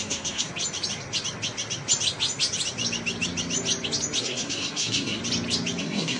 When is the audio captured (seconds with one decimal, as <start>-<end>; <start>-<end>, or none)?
0.5-4.2; 5.2-5.8